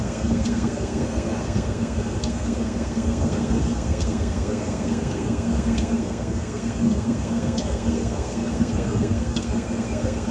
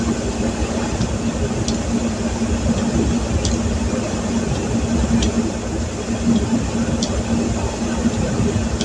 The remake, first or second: first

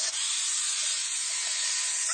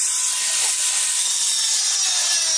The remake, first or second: first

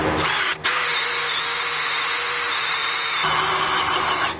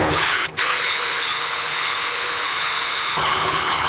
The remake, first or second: second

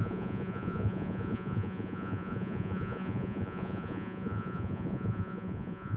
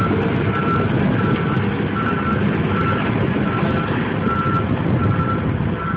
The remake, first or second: first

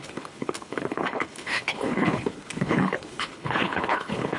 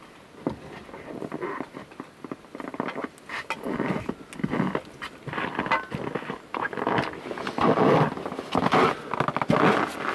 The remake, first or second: first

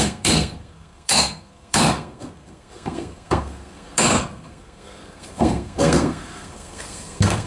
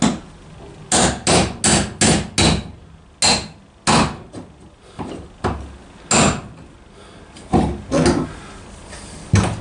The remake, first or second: first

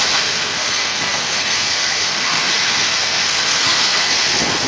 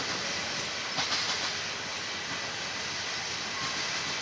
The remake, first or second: first